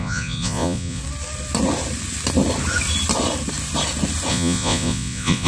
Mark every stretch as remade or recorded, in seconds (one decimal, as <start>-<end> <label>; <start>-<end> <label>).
0.0-1.0 remade; 1.0-4.3 recorded; 4.3-5.5 remade